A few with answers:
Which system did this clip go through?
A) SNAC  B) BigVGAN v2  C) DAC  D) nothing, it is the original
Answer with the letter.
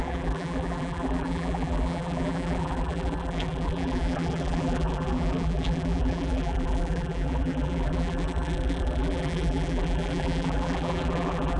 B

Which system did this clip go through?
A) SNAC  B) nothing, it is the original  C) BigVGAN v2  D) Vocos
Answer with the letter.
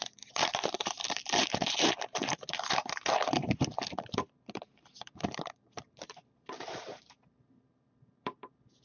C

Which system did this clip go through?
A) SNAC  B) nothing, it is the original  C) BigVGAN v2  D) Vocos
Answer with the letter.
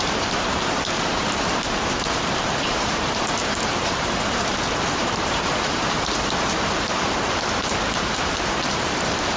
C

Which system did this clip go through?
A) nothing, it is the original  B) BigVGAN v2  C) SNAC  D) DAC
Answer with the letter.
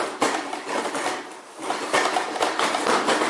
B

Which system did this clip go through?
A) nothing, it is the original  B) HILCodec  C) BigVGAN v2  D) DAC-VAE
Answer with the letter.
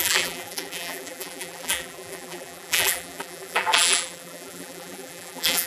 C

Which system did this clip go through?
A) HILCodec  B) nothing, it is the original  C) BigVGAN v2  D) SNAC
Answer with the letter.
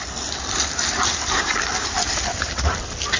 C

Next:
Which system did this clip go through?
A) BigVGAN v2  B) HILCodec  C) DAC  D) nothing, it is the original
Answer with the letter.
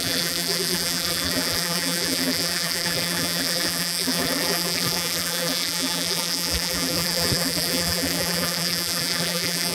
A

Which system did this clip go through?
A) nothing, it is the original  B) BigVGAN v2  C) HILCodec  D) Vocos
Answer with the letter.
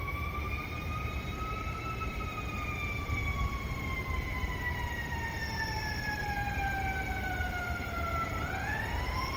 B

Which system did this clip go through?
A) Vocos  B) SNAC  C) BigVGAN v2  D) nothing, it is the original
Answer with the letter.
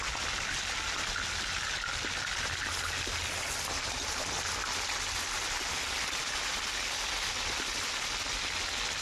D